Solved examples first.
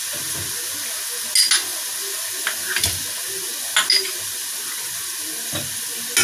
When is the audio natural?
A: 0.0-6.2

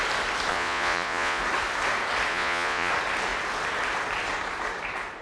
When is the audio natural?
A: 0.0-0.5; 1.4-2.3; 2.9-5.2

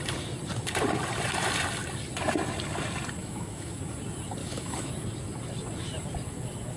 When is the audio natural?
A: 0.0-3.2; 3.8-4.4; 4.9-6.8